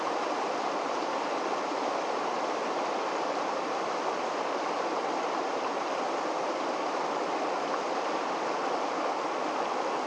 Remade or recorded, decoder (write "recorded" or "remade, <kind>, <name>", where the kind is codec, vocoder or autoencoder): recorded